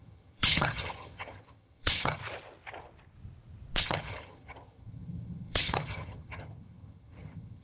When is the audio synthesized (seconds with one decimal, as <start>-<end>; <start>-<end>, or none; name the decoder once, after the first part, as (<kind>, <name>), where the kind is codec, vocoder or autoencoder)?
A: 0.0-2.2 (vocoder, HiFi-GAN); 3.8-7.6